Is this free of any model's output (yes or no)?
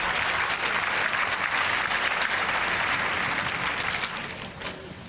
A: yes